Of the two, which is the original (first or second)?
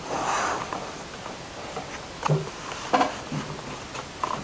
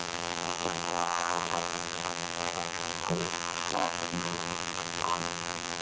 first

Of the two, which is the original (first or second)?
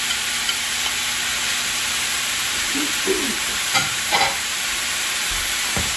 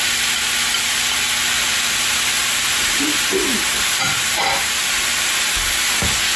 second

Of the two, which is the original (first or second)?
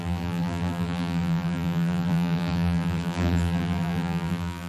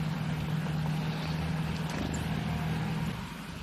second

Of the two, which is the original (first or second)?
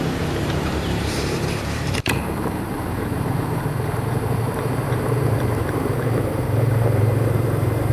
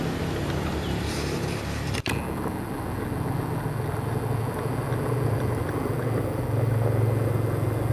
second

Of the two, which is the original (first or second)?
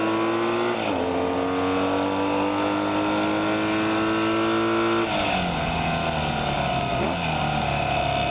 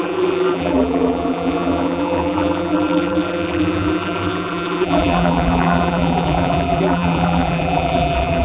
first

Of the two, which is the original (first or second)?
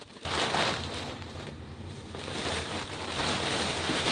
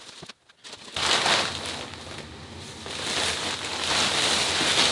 second